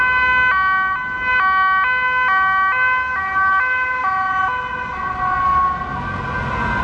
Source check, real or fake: real